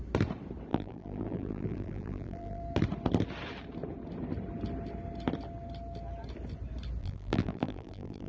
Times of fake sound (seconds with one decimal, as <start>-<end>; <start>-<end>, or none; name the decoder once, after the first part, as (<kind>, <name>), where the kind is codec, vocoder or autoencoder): 0.7-2.6 (vocoder, BigVGAN v2); 7.0-8.3